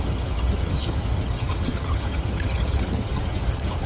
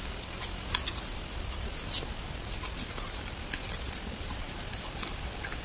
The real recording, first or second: second